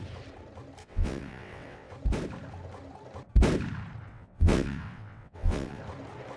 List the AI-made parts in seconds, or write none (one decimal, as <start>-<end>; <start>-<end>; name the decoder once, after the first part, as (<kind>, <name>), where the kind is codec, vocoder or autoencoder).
0.8-1.9 (vocoder, WaveNeXt); 4.1-5.8